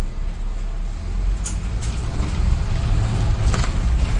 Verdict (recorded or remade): recorded